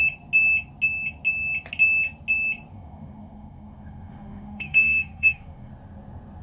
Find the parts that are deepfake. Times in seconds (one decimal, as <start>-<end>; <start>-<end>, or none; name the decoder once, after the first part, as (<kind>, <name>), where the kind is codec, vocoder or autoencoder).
2.7-5.7 (autoencoder, DAC-VAE)